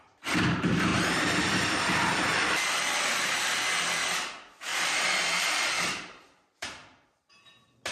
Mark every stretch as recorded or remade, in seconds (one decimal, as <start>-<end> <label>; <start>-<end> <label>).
0.0-0.9 recorded; 0.9-3.4 remade; 3.4-4.7 recorded; 4.7-7.4 remade; 7.4-7.9 recorded